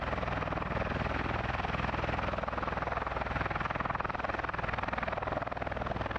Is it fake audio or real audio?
real